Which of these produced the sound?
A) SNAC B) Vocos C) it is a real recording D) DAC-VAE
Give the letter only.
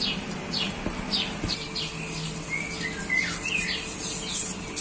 C